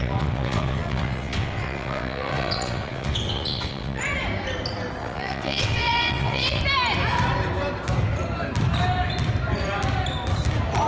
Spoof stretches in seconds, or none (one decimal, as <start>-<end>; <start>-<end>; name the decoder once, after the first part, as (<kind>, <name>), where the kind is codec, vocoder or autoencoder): 0.0-4.0 (vocoder, WaveNeXt); 5.0-6.6